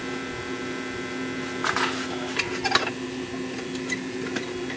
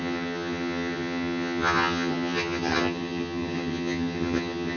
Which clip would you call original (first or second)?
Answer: first